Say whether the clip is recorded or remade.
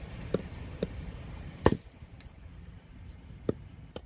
remade